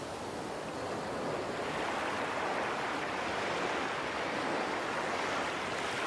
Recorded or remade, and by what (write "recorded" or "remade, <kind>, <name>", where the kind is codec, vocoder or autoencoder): recorded